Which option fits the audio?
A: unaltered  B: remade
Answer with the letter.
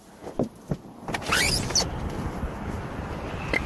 A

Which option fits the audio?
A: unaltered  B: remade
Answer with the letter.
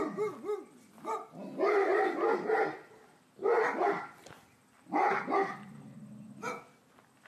A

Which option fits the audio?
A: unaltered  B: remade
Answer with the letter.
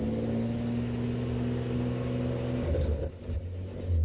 A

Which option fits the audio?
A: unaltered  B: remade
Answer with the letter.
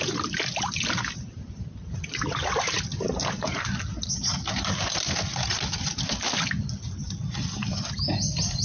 A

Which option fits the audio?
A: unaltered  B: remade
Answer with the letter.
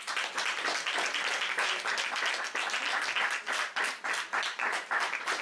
A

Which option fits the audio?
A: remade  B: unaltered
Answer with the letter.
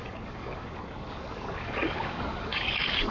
A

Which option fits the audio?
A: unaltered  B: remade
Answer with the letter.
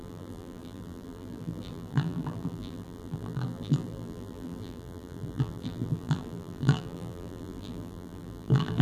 B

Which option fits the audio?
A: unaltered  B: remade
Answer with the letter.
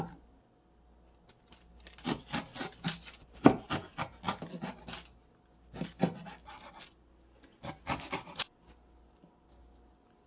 A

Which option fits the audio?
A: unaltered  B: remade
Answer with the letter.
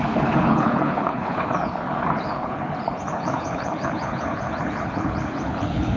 B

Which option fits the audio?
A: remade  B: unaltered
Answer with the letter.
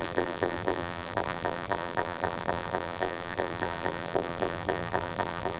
A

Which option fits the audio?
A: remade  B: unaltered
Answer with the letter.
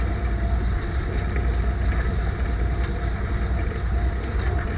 B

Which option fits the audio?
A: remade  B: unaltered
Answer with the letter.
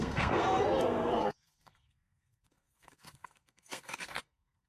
A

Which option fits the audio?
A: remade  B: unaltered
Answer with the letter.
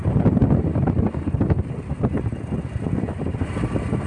B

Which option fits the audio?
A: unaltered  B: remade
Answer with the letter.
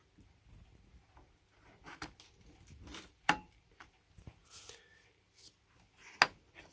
A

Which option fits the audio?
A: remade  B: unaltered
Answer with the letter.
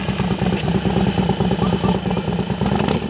B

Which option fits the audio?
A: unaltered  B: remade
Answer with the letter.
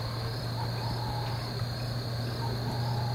A